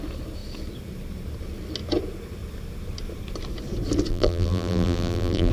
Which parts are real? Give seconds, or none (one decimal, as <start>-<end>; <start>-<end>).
0.0-4.1